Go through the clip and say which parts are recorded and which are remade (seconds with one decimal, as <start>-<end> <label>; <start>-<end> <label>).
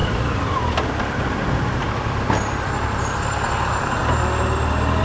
0.0-5.0 recorded